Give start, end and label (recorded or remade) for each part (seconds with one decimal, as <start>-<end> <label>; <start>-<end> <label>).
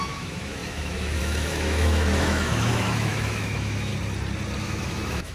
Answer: 0.0-3.9 remade; 3.9-4.6 recorded; 4.6-5.3 remade